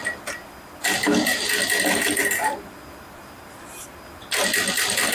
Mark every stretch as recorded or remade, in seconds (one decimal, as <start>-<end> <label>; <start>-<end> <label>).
0.0-0.6 recorded; 0.6-1.6 remade; 1.6-2.2 recorded; 2.2-4.4 remade; 4.4-5.1 recorded